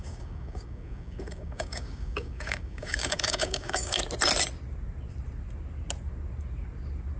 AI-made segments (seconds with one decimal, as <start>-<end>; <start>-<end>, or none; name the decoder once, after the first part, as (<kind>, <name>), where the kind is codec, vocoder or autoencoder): 0.0-4.0 (codec, DAC)